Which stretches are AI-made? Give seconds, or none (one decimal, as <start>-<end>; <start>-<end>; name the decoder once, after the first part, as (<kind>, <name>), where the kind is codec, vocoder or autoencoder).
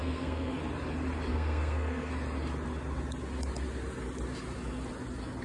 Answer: 0.0-0.5 (codec, SNAC); 1.3-2.1